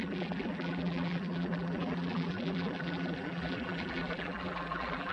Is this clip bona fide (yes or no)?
no